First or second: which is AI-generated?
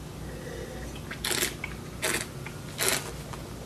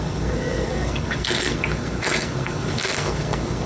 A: second